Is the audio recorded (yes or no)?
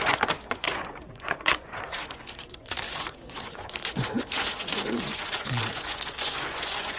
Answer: no